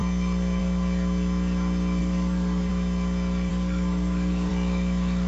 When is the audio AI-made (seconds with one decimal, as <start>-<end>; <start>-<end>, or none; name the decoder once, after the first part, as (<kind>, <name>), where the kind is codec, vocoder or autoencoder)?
2.0-2.7 (codec, DAC); 3.5-4.5